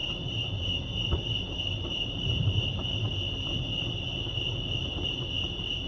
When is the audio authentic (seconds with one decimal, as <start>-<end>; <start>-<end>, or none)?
3.0-4.8; 5.3-5.9